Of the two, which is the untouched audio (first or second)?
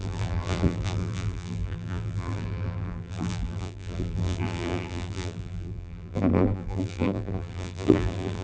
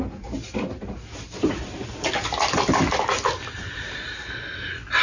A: second